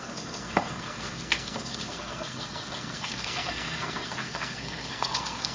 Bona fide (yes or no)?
no